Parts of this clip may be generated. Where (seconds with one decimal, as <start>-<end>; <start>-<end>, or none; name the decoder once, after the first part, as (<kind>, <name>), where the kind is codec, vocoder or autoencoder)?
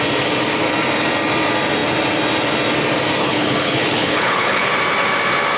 3.2-4.7 (codec, HILCodec)